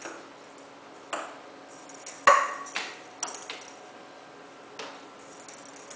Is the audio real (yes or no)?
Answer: yes